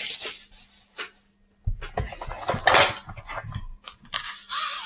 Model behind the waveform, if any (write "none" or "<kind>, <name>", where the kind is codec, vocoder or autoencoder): none